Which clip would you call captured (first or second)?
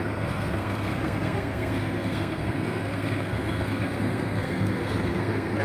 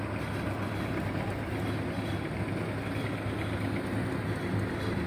second